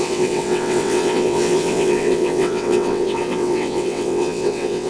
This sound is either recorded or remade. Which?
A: remade